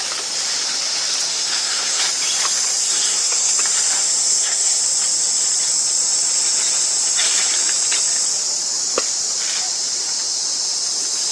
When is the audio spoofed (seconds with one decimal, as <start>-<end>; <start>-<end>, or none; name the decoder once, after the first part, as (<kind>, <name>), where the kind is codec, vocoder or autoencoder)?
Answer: 1.3-2.0 (codec, SNAC); 2.8-3.5; 4.2-4.8